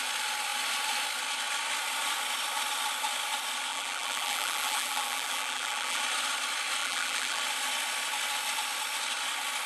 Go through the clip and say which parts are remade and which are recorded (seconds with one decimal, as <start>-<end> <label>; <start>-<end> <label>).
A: 0.0-3.7 recorded; 3.7-6.0 remade; 6.0-6.8 recorded; 6.8-7.4 remade; 7.4-9.7 recorded